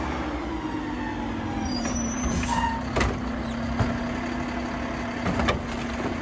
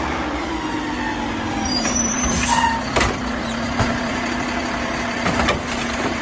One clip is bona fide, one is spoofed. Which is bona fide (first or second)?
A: first